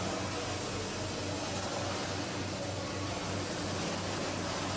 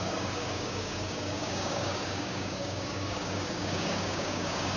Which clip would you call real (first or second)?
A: first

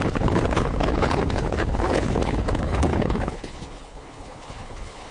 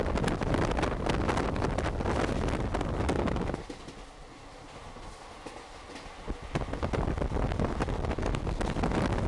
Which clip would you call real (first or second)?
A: second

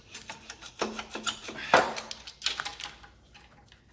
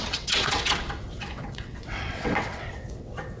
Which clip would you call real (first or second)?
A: first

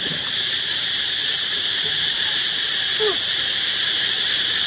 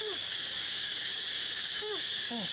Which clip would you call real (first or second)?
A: first